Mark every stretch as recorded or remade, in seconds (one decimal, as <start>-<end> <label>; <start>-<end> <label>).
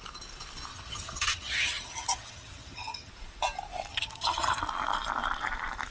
0.0-0.7 recorded; 0.7-3.1 remade; 3.1-3.9 recorded; 3.9-4.6 remade; 4.6-5.9 recorded